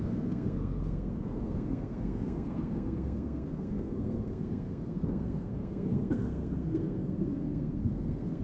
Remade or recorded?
remade